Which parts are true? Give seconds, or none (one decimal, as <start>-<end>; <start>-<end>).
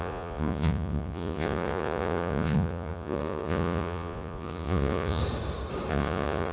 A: 5.2-5.9